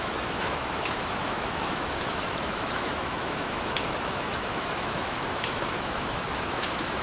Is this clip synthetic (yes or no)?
yes